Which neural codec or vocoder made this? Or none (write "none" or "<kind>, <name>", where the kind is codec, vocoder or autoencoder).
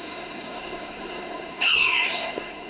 codec, SNAC